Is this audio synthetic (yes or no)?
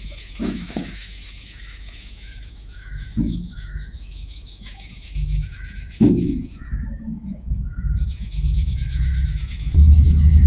yes